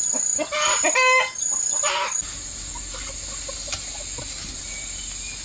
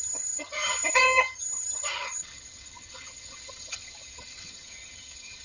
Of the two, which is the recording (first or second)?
first